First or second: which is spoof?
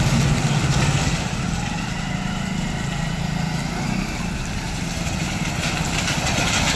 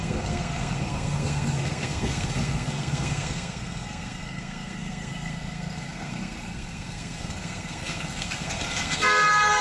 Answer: second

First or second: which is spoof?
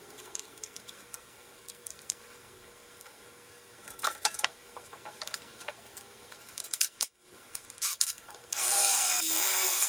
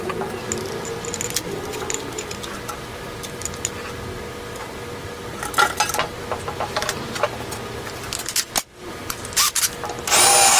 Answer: first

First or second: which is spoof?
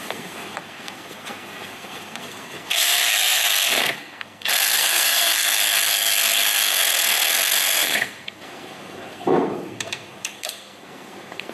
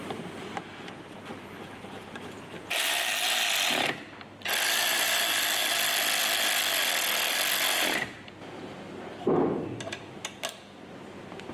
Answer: first